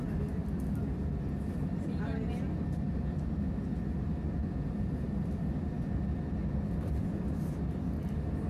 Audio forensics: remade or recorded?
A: recorded